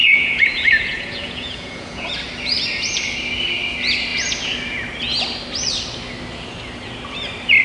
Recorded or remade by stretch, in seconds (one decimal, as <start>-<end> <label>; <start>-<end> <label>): 0.0-2.1 remade; 2.1-7.6 recorded